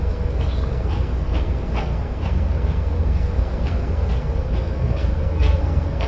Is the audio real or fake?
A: fake